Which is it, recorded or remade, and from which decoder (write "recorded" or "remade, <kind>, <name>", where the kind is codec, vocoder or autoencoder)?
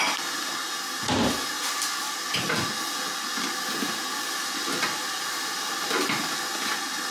recorded